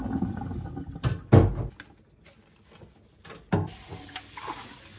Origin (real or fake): real